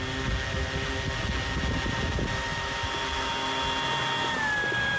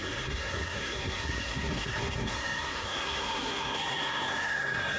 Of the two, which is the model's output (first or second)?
second